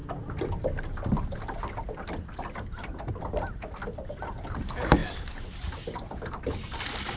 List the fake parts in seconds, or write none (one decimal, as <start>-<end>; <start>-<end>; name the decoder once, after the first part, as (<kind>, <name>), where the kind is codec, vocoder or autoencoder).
none